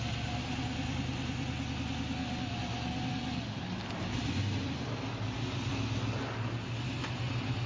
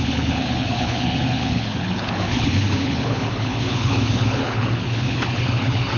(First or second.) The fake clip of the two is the second